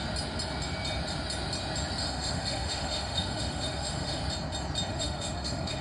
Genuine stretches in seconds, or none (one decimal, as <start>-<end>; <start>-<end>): 0.0-2.0; 4.2-4.9